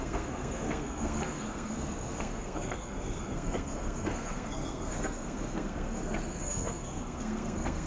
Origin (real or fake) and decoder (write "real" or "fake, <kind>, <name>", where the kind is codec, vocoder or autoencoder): fake, codec, SNAC